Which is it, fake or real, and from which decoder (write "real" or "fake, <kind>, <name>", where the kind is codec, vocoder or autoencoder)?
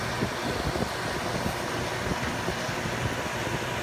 real